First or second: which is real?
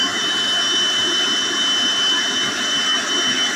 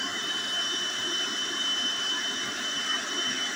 first